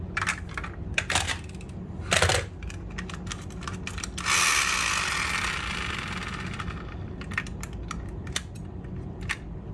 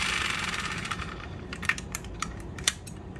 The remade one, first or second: second